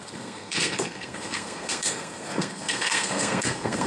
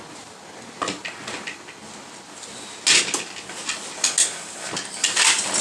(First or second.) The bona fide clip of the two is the second